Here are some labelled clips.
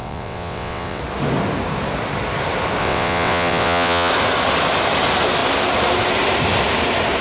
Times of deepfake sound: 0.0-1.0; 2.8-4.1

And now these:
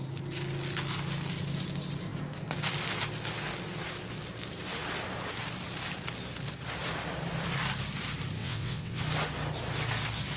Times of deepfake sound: 8.4-9.0